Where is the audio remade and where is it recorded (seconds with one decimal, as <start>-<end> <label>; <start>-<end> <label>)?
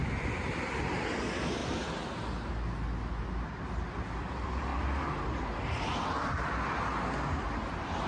0.0-8.1 recorded